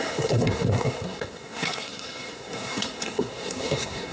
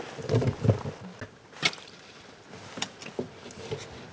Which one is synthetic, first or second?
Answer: first